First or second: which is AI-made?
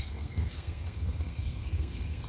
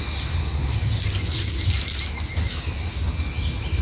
first